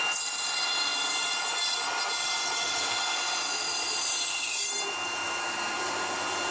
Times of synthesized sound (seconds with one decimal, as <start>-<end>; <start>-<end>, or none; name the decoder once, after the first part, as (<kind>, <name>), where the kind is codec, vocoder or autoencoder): none